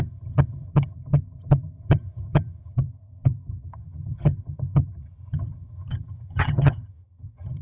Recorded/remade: remade